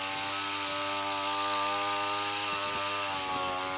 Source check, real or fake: real